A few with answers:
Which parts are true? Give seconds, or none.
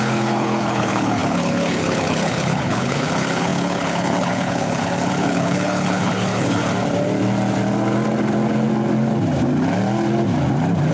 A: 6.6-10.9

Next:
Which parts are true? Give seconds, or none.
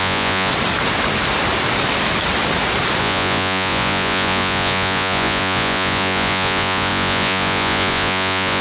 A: 0.5-3.0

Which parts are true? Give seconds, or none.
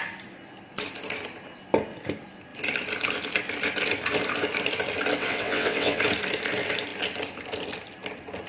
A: 0.0-5.2; 6.0-8.5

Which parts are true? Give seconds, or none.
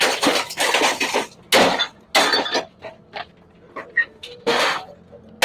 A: 0.0-4.0; 4.8-5.4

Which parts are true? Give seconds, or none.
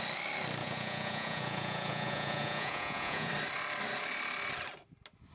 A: 0.0-0.6; 3.3-5.3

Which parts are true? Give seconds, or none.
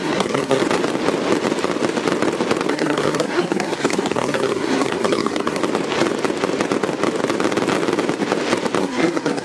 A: 0.6-2.7; 5.6-8.8